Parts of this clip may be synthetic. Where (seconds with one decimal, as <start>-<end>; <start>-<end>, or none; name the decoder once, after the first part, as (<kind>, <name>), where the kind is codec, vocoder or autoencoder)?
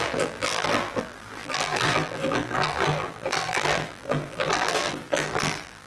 0.0-5.9 (vocoder, BigVGAN v2)